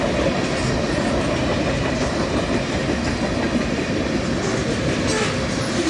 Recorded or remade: recorded